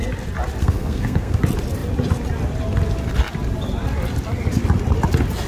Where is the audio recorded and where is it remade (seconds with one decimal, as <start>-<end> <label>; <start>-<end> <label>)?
0.0-0.6 recorded; 0.6-1.4 remade; 1.4-5.5 recorded